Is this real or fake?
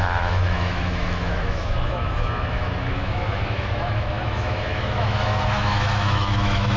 fake